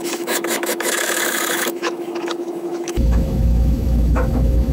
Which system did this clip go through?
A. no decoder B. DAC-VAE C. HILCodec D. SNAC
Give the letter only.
B